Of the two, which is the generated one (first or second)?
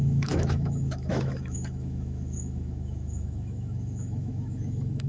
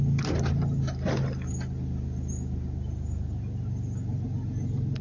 first